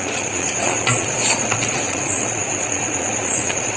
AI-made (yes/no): yes